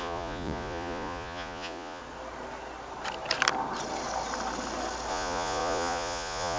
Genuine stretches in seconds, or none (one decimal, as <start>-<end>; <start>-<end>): 2.0-5.1